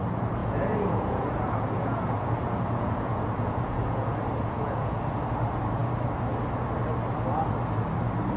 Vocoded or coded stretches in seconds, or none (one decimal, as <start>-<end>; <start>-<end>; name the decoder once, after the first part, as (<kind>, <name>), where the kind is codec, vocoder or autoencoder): 0.4-5.2 (vocoder, Vocos)